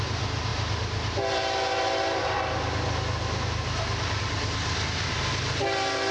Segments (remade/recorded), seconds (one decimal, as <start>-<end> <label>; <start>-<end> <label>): 0.0-6.1 recorded

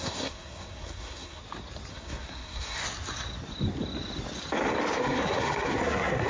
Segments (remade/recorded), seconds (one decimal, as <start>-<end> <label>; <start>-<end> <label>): 0.0-1.4 remade; 1.4-1.9 recorded; 1.9-2.8 remade; 2.8-5.0 recorded; 5.0-6.3 remade